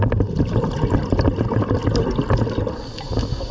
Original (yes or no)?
yes